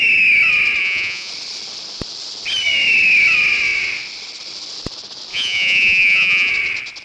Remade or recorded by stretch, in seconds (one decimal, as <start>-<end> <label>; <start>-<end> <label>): 0.0-0.8 recorded; 0.8-1.3 remade; 1.3-5.3 recorded; 5.3-6.5 remade; 6.5-7.0 recorded